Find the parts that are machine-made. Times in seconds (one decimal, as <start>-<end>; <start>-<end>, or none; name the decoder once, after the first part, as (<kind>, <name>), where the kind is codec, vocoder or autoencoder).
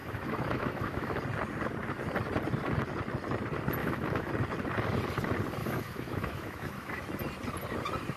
0.0-1.2 (autoencoder, DAC-VAE); 3.8-4.3; 5.6-7.0